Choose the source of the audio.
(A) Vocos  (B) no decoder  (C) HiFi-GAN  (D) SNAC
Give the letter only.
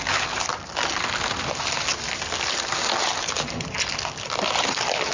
B